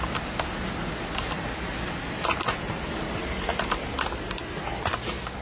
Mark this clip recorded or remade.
recorded